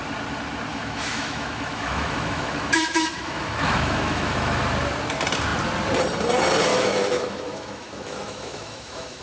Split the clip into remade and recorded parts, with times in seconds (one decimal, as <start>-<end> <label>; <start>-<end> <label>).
0.0-0.7 recorded; 0.7-4.6 remade; 4.6-6.7 recorded; 6.7-9.2 remade